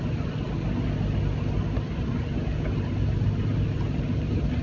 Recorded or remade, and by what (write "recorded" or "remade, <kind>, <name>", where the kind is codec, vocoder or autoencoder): recorded